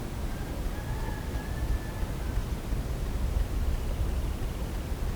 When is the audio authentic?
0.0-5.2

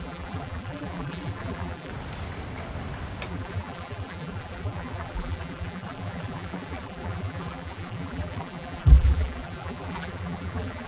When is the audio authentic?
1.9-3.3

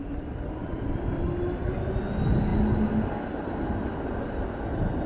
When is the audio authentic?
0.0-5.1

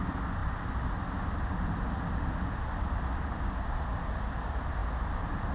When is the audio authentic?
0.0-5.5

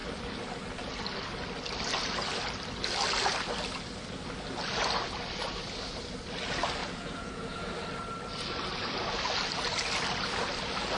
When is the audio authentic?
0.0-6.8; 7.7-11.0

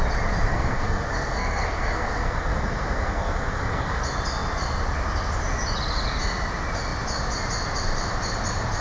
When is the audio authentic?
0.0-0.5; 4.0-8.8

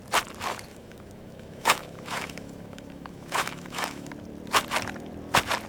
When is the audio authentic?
0.0-0.7; 4.1-5.7

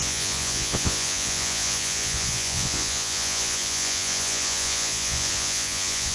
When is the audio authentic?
none